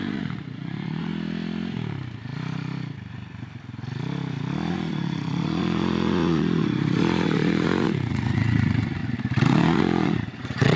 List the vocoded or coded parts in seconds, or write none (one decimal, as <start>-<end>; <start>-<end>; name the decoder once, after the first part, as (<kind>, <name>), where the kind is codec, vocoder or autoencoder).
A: 0.0-1.1 (vocoder, Vocos); 4.7-9.0; 9.5-10.8